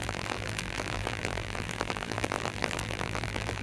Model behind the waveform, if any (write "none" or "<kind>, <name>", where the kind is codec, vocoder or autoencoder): vocoder, BigVGAN v2